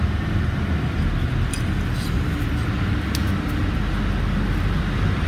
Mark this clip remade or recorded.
recorded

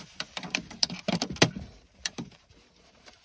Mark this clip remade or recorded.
remade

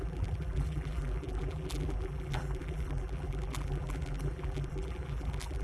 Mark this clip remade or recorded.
remade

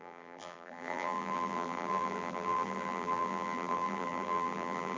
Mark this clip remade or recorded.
remade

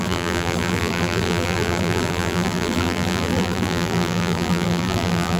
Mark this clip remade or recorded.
remade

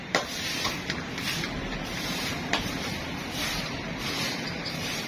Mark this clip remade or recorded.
remade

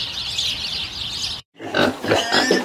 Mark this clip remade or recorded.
recorded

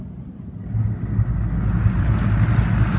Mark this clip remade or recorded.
recorded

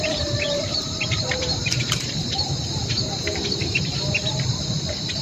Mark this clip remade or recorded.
remade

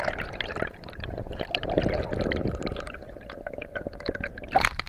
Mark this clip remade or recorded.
remade